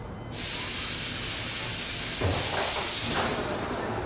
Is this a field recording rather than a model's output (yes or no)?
yes